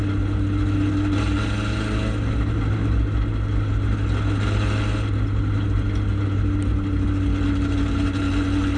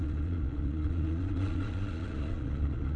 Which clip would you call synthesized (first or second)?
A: second